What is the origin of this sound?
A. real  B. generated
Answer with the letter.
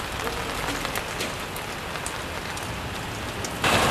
A